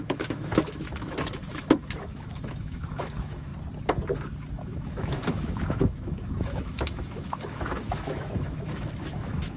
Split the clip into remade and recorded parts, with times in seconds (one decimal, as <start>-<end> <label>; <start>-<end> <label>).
0.0-3.5 remade; 3.5-4.5 recorded; 4.5-9.6 remade